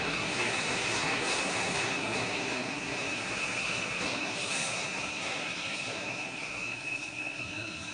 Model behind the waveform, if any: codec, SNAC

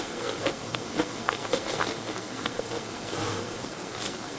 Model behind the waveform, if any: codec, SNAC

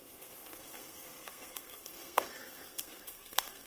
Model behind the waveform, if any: codec, SNAC